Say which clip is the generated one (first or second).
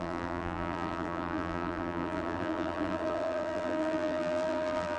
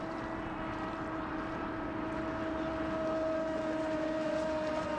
first